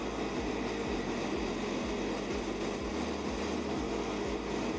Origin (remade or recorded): recorded